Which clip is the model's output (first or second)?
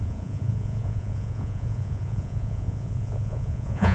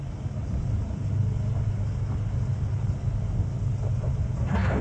first